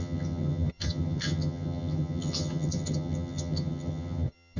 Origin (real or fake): fake